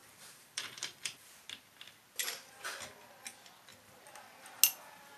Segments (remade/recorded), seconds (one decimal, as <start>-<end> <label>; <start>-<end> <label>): 0.0-1.3 remade; 1.3-5.2 recorded